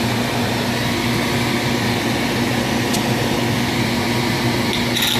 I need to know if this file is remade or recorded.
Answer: recorded